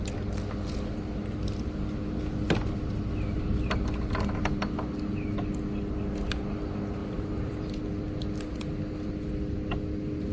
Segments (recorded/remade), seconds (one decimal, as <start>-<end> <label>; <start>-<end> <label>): 0.0-7.0 recorded; 7.0-7.8 remade; 7.8-10.3 recorded